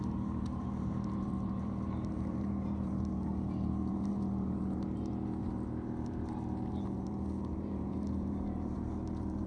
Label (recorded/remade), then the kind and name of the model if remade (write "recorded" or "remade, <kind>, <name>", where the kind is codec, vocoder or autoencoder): remade, vocoder, BigVGAN v2